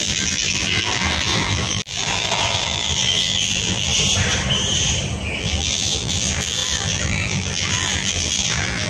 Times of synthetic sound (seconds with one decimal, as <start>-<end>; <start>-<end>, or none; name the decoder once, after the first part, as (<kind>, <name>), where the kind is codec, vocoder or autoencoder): 0.0-3.9 (vocoder, BigVGAN v2); 5.4-8.9